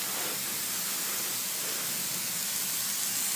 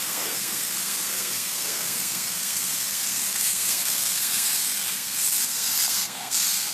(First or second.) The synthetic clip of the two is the second